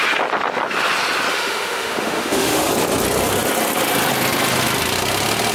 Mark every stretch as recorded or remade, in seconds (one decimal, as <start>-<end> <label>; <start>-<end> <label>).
0.0-1.3 recorded; 1.3-2.7 remade; 2.7-5.5 recorded